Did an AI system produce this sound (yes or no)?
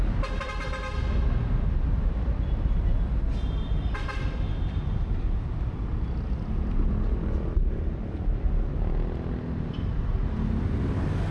no